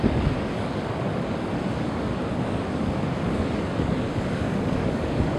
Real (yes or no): no